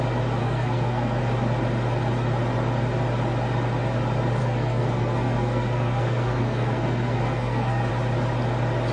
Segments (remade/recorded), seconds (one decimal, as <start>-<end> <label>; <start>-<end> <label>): 0.0-0.4 recorded; 0.4-1.2 remade; 1.2-4.4 recorded; 4.4-7.9 remade; 7.9-8.9 recorded